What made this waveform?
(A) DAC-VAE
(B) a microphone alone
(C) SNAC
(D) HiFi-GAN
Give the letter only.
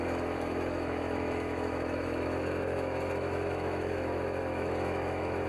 A